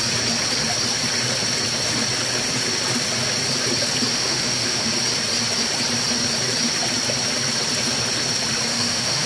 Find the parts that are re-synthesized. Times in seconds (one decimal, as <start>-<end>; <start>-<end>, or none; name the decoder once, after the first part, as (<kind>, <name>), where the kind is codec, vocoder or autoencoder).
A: 4.1-4.9 (autoencoder, DAC-VAE); 8.7-9.3

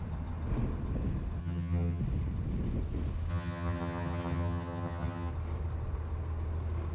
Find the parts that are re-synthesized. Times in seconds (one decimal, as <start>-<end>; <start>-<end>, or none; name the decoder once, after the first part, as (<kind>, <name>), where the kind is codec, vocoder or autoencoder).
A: 1.4-2.0 (vocoder, HiFi-GAN); 3.3-5.3

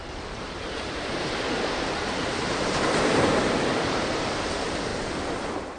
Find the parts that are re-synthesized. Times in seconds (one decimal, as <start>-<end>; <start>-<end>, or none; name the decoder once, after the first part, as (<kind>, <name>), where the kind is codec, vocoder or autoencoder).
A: 0.0-4.9 (vocoder, BigVGAN v2)

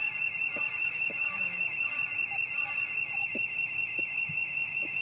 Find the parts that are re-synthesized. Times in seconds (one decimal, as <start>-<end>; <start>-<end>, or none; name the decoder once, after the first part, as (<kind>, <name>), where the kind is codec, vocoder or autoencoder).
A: 0.8-1.9 (autoencoder, DAC-VAE); 3.2-5.0

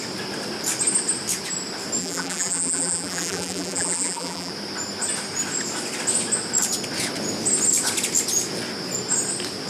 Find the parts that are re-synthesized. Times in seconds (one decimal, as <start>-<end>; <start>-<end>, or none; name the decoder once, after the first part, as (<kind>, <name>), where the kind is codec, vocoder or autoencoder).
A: 2.0-4.5 (vocoder, BigVGAN v2)

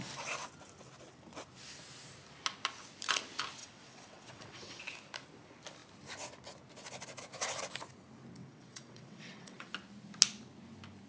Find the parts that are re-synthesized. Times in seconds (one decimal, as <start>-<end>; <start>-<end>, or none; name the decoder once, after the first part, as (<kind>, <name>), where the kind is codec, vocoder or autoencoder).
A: 3.6-4.8 (vocoder, WaveNeXt); 8.4-9.7

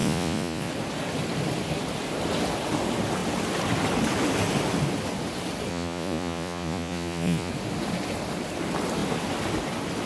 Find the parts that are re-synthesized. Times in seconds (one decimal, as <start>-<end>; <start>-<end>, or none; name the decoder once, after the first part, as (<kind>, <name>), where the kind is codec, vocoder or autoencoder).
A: 0.0-0.7 (vocoder, Vocos); 5.7-7.5

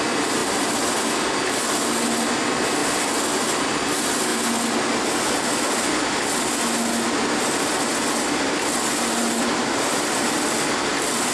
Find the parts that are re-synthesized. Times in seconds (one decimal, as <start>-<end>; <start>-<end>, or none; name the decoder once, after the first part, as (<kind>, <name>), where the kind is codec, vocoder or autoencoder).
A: none